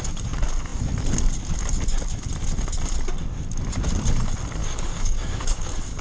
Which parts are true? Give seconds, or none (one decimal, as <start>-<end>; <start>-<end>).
0.0-4.6